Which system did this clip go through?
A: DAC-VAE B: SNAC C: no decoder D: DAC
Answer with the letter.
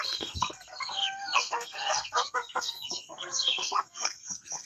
B